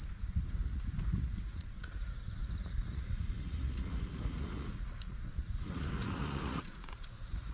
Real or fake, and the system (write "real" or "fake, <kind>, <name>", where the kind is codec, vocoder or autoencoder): fake, vocoder, Vocos